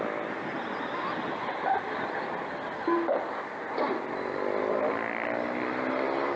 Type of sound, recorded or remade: recorded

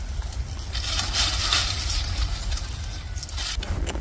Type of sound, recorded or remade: recorded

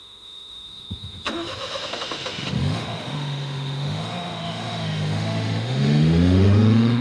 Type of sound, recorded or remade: remade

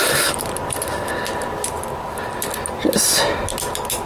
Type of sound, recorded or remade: recorded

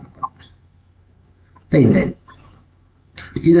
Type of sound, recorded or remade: remade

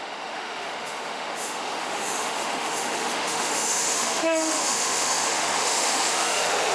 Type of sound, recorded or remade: remade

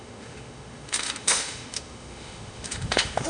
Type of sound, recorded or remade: remade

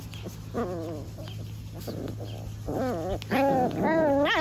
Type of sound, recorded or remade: recorded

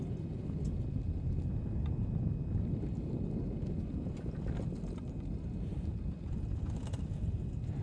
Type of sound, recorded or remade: recorded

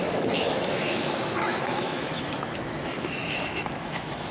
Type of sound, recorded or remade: remade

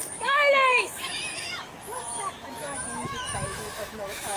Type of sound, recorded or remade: remade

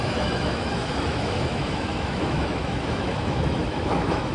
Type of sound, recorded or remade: remade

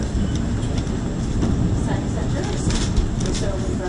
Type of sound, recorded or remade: recorded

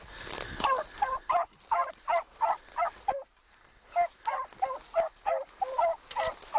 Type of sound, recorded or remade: recorded